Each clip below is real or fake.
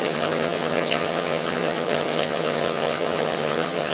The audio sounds fake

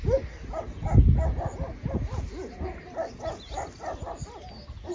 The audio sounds real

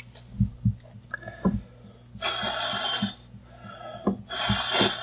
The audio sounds real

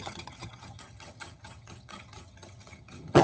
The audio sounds fake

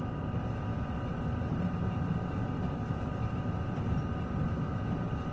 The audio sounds real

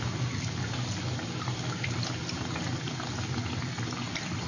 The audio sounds real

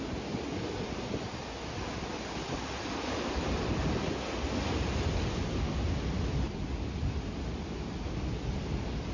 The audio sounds real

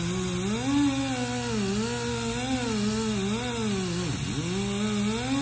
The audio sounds real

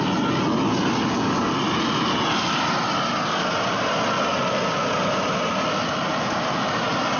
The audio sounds real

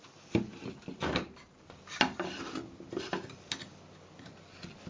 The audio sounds real